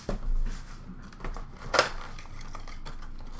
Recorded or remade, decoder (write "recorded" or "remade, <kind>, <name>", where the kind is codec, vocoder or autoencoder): recorded